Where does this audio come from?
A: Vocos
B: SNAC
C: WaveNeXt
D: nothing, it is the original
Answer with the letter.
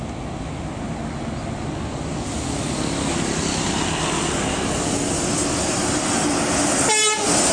D